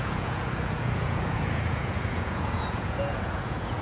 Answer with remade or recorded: remade